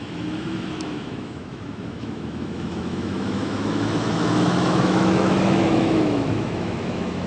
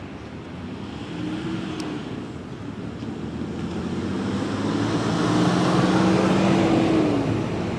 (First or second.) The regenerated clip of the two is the first